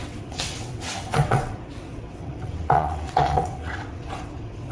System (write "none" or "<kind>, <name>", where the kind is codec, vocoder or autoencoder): vocoder, WaveNeXt